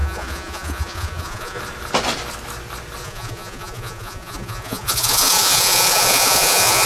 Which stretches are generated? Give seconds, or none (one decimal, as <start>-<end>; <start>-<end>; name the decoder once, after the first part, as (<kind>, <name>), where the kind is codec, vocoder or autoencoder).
0.0-1.6 (vocoder, Vocos); 3.0-6.9